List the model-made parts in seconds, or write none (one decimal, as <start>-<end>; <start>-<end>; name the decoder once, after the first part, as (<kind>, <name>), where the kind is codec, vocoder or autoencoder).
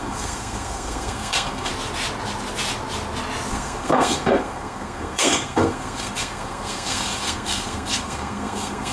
0.0-1.7 (codec, SNAC); 3.5-8.9